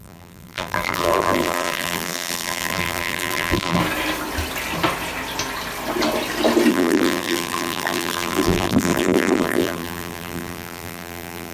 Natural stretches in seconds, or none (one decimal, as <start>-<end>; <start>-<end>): 3.8-6.7